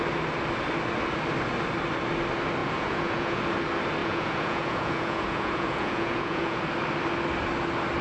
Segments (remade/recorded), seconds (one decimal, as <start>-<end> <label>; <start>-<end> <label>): 0.0-2.6 recorded; 2.6-3.4 remade; 3.4-4.0 recorded; 4.0-6.6 remade; 6.6-8.0 recorded